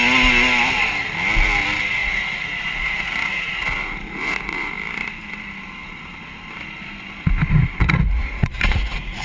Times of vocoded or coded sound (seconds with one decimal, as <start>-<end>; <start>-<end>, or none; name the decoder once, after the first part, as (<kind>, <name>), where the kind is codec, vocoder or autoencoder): 2.0-4.7 (vocoder, Vocos); 7.8-9.2